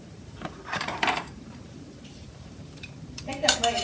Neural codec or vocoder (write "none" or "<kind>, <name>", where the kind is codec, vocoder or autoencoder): vocoder, BigVGAN v2